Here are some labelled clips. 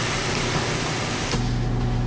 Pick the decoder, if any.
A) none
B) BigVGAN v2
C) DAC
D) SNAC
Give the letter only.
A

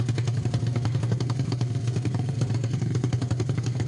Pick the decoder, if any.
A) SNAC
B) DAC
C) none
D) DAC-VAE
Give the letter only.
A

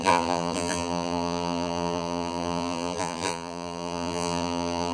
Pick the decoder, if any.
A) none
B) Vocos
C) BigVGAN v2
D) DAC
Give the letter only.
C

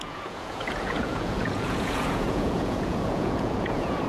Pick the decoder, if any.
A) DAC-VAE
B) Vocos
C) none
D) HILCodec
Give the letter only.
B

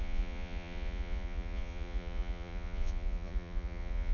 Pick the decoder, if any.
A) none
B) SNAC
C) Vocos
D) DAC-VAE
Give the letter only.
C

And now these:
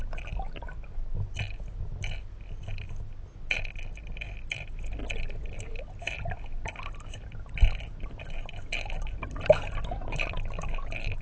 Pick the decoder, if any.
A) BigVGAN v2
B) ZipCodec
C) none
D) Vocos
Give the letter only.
C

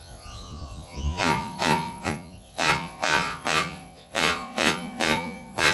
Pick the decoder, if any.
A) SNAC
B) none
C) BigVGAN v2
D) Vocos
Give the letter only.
D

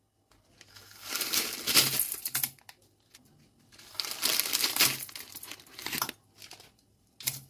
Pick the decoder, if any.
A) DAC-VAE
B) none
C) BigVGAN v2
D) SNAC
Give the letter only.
B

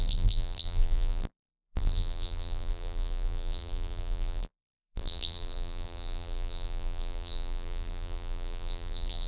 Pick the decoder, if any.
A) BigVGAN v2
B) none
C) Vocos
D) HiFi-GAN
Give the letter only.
A